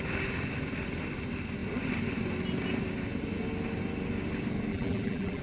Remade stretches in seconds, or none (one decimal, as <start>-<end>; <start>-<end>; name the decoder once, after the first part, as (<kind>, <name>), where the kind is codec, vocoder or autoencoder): 4.7-5.4 (vocoder, BigVGAN v2)